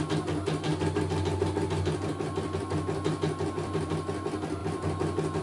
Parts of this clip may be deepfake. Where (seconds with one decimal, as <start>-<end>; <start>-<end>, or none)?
none